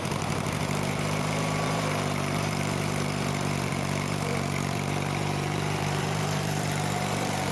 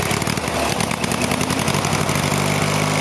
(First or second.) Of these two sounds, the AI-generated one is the first